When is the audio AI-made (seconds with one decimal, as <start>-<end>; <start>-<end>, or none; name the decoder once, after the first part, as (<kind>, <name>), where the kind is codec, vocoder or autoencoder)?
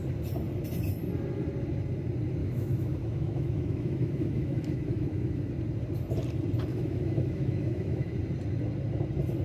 2.4-5.5 (autoencoder, DAC-VAE); 6.7-8.1